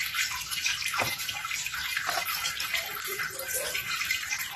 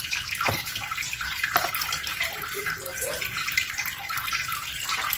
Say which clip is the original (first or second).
second